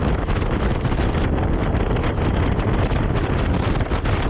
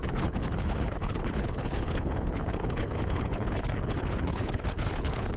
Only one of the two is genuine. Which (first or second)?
first